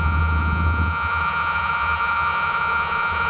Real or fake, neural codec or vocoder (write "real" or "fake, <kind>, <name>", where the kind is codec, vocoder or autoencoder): fake, vocoder, Vocos